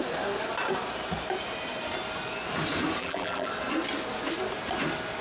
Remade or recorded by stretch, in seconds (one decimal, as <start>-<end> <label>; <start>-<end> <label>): 0.0-3.0 recorded; 3.0-3.5 remade; 3.5-5.2 recorded